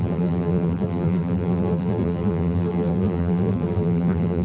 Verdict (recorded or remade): remade